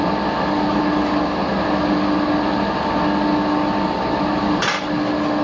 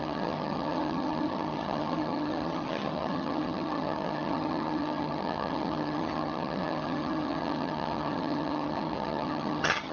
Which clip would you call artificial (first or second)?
second